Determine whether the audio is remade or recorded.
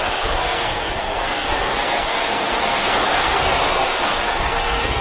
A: remade